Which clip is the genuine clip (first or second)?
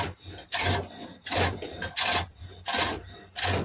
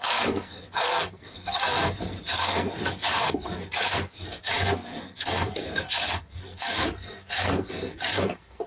first